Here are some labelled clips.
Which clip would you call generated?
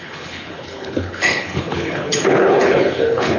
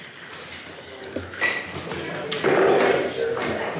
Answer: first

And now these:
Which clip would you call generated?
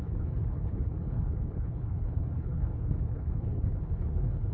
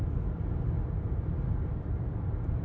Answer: first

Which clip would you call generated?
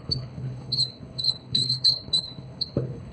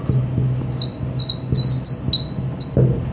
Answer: first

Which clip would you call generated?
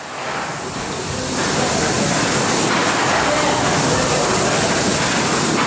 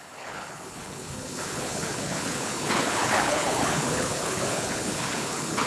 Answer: second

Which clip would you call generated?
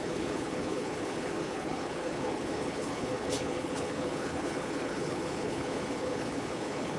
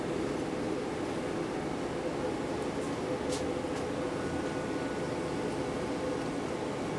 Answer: first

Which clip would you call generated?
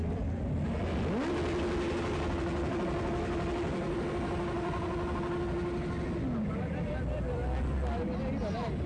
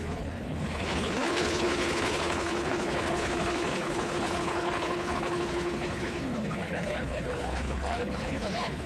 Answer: second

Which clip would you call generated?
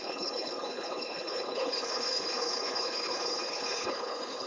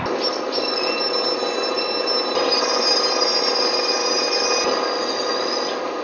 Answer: first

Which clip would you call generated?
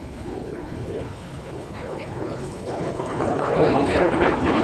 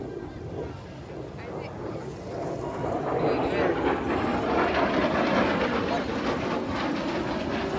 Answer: first